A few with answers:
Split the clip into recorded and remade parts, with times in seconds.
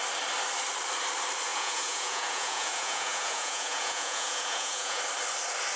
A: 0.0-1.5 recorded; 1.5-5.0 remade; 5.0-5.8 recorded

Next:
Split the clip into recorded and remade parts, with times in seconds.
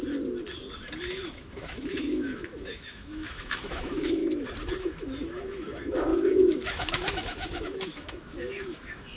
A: 0.0-1.1 recorded; 1.1-4.2 remade; 4.2-4.8 recorded; 4.8-9.2 remade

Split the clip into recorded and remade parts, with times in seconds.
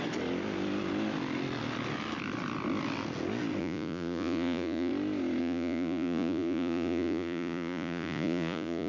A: 0.0-3.6 recorded; 3.6-4.9 remade; 4.9-5.4 recorded; 5.4-8.9 remade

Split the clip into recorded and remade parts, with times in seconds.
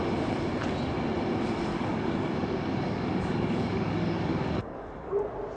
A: 0.0-1.7 recorded; 1.7-5.1 remade; 5.1-5.6 recorded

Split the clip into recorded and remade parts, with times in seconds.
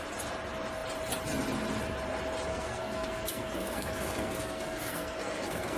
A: 0.0-2.5 recorded; 2.5-5.8 remade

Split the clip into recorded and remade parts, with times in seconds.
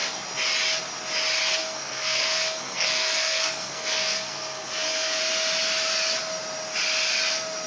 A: 0.0-1.4 recorded; 1.4-5.2 remade; 5.2-7.7 recorded